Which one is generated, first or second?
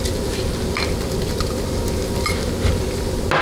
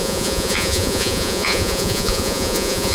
second